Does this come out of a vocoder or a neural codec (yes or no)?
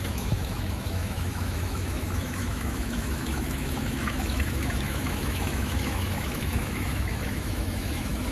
yes